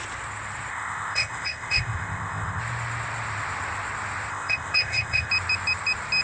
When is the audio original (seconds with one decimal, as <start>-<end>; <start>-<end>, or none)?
0.0-0.7; 2.6-4.3; 5.3-6.2